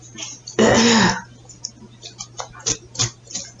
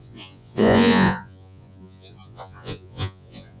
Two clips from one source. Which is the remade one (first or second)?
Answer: second